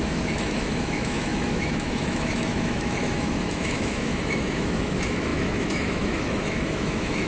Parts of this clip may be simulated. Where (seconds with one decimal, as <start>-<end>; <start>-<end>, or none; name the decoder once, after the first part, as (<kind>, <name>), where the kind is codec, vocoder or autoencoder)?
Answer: 0.0-7.3 (autoencoder, DAC-VAE)